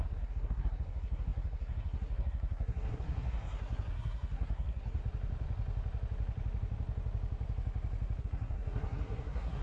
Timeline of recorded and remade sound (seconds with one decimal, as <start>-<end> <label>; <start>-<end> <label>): 0.0-5.0 remade; 5.0-8.2 recorded; 8.2-9.6 remade